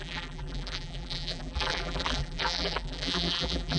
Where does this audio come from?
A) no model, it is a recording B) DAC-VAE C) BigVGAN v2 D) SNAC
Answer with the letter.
C